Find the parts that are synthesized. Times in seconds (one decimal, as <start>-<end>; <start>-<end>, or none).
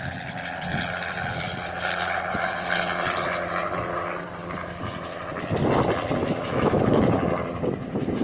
6.2-6.8